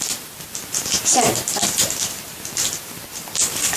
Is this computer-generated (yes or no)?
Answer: no